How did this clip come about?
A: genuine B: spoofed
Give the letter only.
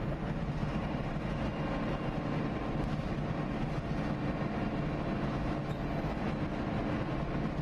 A